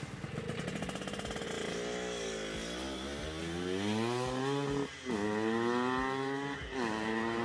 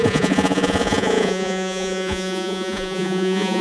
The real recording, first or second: first